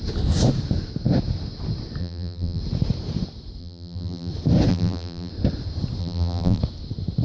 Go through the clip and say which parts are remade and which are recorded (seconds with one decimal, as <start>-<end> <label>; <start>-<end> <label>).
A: 0.0-2.0 recorded; 2.0-2.6 remade; 2.6-3.6 recorded; 3.6-4.3 remade; 4.3-4.7 recorded; 4.7-5.3 remade; 5.3-6.0 recorded; 6.0-6.6 remade; 6.6-7.2 recorded